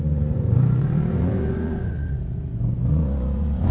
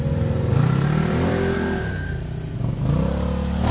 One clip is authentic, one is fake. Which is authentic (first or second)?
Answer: second